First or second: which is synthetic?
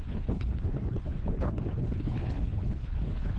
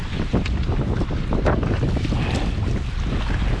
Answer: first